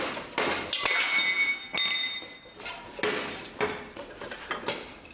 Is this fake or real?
real